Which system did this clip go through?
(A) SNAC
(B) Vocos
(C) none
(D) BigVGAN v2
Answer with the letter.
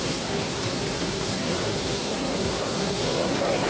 A